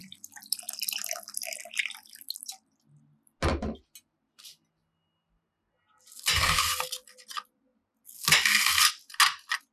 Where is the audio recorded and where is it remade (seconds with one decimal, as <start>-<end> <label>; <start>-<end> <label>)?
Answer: 0.0-9.7 recorded